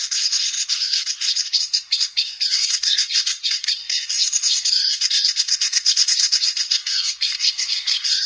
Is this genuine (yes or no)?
no